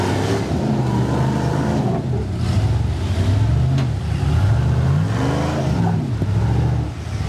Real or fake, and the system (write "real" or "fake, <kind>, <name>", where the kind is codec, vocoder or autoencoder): real